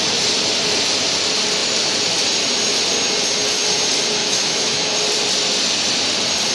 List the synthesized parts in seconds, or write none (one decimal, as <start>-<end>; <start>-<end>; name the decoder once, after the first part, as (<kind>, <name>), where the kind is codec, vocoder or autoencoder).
4.2-4.9 (autoencoder, DAC-VAE)